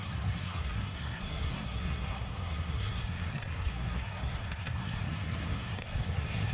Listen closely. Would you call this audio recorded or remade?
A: remade